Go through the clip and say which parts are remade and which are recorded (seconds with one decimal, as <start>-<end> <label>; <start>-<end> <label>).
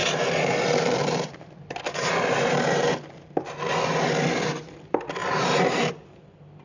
0.0-3.5 remade; 3.5-5.2 recorded; 5.2-5.9 remade; 5.9-6.6 recorded